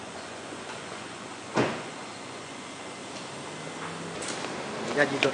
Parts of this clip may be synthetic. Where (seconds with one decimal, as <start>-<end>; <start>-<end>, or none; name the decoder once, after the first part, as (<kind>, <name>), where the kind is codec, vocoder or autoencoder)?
0.0-3.0 (vocoder, Vocos)